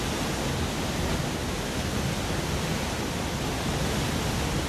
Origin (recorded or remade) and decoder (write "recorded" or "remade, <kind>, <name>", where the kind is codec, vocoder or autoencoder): recorded